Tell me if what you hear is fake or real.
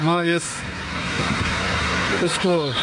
fake